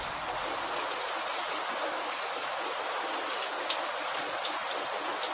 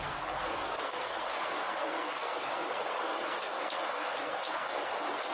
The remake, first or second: second